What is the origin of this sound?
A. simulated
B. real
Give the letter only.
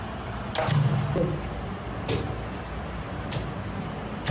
B